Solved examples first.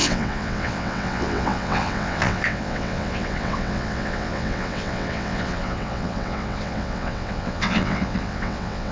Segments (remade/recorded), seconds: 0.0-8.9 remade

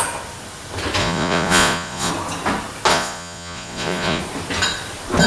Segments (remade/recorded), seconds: 0.0-1.0 recorded; 1.0-2.1 remade; 2.1-2.9 recorded; 2.9-4.2 remade; 4.2-5.3 recorded